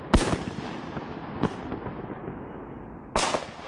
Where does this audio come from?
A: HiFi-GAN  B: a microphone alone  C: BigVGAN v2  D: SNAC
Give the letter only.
B